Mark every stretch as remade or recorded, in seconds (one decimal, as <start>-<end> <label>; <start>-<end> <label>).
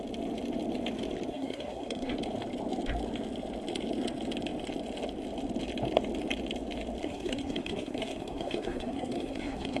0.0-1.3 recorded; 1.3-2.1 remade; 2.1-7.0 recorded; 7.0-9.8 remade